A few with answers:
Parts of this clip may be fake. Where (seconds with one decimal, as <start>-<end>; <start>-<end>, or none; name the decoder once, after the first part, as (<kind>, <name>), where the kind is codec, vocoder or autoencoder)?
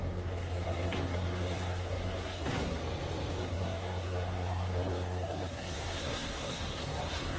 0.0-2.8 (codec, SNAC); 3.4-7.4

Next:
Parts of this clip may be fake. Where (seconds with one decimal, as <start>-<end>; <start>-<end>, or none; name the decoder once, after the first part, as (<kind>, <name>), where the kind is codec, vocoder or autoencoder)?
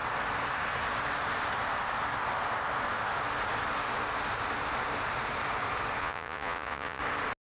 6.0-7.0 (vocoder, Vocos)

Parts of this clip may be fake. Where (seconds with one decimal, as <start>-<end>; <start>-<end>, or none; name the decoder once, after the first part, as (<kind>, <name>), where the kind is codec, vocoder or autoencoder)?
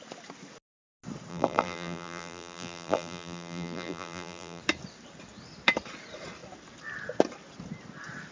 1.3-4.6 (vocoder, BigVGAN v2)